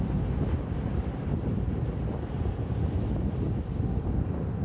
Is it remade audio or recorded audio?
recorded